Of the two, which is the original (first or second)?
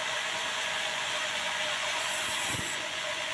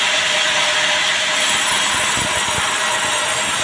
second